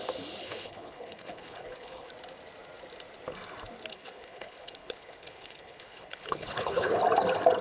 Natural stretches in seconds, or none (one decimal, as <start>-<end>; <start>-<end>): 0.0-0.4; 2.1-3.9; 7.0-7.6